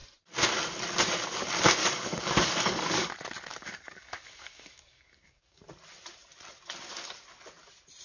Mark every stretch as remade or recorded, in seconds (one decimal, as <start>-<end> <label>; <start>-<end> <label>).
0.0-1.8 recorded; 1.8-3.1 remade; 3.1-3.5 recorded; 3.5-5.6 remade; 5.6-8.0 recorded